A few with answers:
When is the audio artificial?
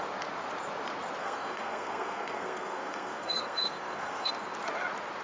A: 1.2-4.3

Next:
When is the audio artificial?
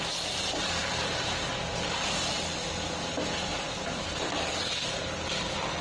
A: 3.5-4.3